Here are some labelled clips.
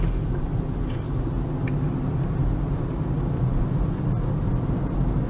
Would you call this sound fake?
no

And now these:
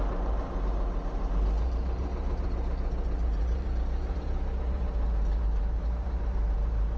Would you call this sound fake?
yes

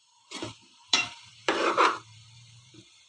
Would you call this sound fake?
yes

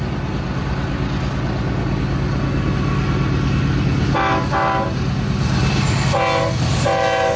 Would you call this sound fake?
no